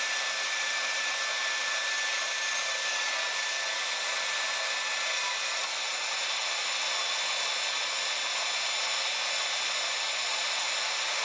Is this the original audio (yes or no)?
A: yes